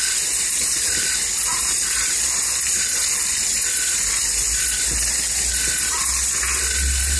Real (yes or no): yes